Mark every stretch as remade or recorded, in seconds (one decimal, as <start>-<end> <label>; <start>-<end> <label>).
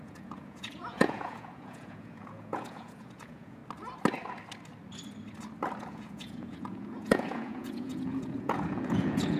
0.0-3.6 remade; 3.6-5.8 recorded; 5.8-9.4 remade